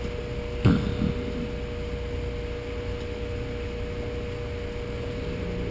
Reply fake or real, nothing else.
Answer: real